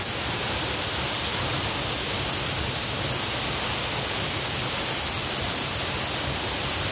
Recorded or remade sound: recorded